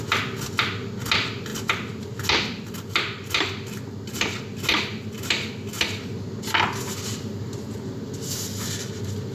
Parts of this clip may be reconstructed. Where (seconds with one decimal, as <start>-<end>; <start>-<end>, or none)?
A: none